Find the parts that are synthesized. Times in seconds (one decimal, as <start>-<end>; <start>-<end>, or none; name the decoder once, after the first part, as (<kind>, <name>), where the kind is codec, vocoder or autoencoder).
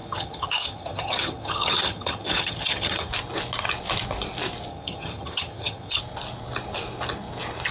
0.0-3.1 (vocoder, HiFi-GAN); 4.7-6.0